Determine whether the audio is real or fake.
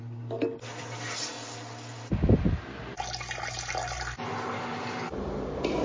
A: real